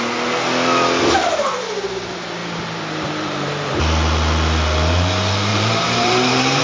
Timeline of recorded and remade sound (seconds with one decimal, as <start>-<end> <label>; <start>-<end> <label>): 0.0-2.4 recorded; 2.4-3.8 remade; 3.8-5.5 recorded; 5.5-6.6 remade